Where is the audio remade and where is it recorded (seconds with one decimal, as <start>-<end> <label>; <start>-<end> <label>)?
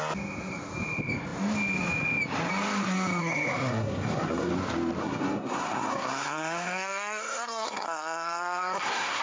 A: 0.0-3.2 recorded; 3.2-4.5 remade; 4.5-5.0 recorded; 5.0-9.2 remade